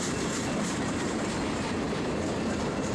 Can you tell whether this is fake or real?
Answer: fake